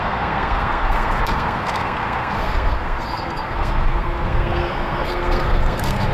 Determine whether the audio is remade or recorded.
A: remade